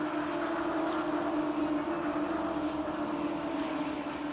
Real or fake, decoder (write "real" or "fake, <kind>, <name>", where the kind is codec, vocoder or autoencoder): real